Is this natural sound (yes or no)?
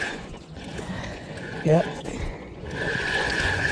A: no